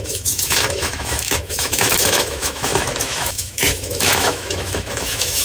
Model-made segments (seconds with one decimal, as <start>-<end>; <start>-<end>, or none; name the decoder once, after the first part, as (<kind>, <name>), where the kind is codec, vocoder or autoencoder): 0.0-5.4 (autoencoder, DAC-VAE)